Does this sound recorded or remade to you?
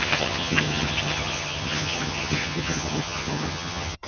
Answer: remade